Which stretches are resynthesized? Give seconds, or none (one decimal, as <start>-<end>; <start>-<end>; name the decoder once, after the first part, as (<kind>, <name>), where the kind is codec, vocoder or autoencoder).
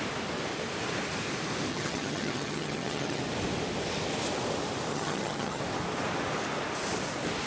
1.7-3.2 (vocoder, HiFi-GAN); 4.9-5.6